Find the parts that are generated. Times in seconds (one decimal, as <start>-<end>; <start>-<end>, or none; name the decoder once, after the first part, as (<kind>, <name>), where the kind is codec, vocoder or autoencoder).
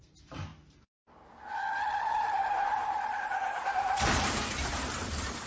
0.0-0.5 (vocoder, BigVGAN v2); 1.9-2.4; 3.2-5.5